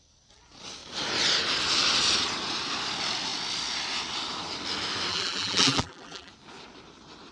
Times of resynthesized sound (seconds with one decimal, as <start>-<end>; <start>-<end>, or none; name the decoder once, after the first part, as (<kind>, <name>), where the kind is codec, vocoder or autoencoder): 5.1-6.3 (vocoder, BigVGAN v2)